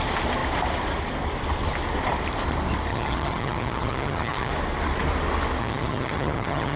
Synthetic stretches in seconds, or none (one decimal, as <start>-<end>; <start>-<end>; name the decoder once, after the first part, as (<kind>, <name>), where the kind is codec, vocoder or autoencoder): 2.9-4.5 (vocoder, HiFi-GAN); 5.6-6.8